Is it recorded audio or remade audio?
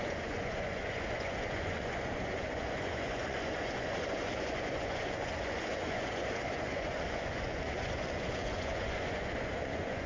remade